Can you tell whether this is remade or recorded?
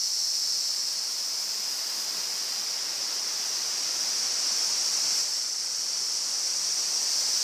recorded